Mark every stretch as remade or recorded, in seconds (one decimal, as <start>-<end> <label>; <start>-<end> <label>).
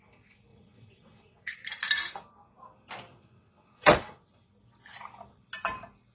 0.0-0.5 recorded; 0.5-1.5 remade; 1.5-3.1 recorded; 3.1-4.5 remade; 4.5-6.1 recorded